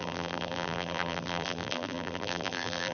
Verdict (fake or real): fake